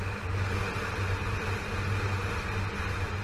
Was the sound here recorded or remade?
recorded